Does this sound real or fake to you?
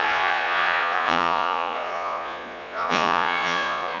fake